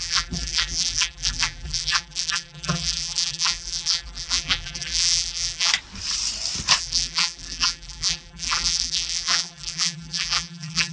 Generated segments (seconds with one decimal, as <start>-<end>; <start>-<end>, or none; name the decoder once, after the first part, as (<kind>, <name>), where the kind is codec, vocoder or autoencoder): 0.0-5.7 (vocoder, BigVGAN v2); 6.8-10.9